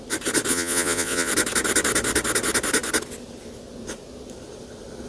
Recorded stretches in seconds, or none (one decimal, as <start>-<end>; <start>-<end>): 0.0-0.5; 1.3-5.1